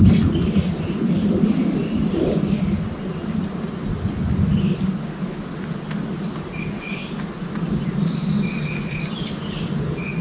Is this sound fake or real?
real